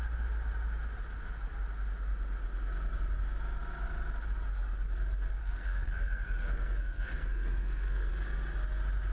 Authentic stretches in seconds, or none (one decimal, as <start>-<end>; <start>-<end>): 0.0-5.4; 8.1-9.1